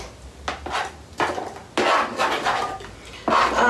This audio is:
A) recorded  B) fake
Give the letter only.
A